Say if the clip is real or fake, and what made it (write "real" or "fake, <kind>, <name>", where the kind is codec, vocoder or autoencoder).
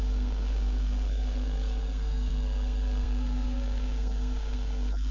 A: fake, codec, SNAC